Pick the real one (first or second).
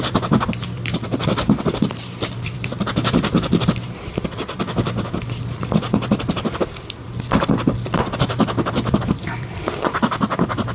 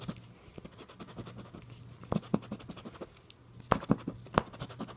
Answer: second